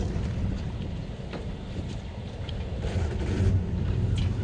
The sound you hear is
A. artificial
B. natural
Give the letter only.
B